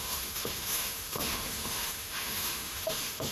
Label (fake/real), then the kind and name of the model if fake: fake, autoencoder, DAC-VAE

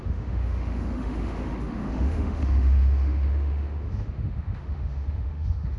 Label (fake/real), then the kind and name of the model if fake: fake, autoencoder, DAC-VAE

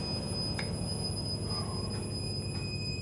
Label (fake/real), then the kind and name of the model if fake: real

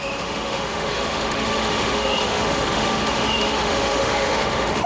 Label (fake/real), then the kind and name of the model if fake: fake, autoencoder, DAC-VAE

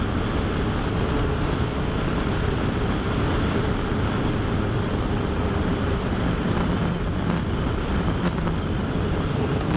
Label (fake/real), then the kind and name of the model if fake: real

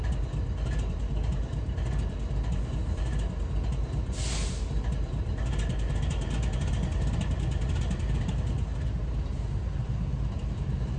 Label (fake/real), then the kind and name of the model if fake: real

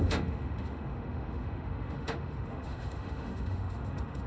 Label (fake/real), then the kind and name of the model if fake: fake, autoencoder, DAC-VAE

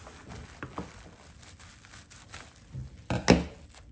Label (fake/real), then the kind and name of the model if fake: real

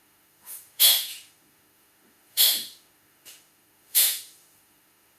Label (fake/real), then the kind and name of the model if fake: fake, autoencoder, DAC-VAE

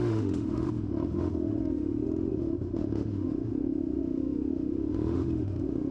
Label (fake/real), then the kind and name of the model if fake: fake, autoencoder, DAC-VAE